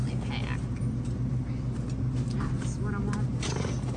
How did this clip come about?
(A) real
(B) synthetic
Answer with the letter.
A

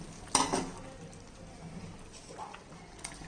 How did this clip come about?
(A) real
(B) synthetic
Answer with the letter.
A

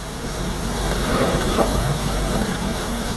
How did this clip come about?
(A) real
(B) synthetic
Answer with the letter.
B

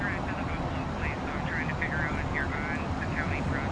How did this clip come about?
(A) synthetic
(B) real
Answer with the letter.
B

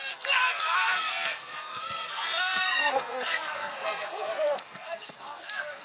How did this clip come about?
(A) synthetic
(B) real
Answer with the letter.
A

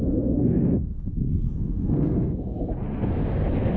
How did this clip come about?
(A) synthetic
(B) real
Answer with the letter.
A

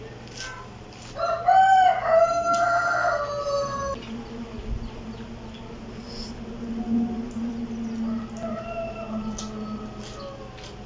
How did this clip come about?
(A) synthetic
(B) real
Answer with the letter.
B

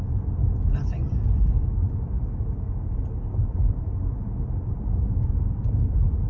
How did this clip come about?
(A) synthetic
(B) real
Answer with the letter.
B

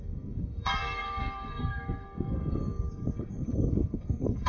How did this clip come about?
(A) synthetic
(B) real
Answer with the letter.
A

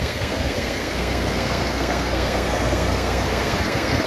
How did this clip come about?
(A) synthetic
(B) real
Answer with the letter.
A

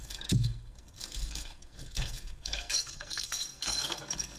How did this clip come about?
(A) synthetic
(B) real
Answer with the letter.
A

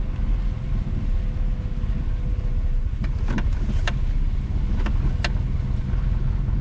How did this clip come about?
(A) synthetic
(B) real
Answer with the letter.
B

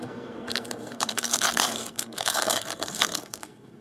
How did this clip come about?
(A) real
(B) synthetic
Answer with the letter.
B